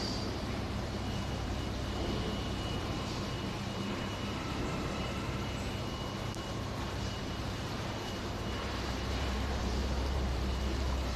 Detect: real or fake fake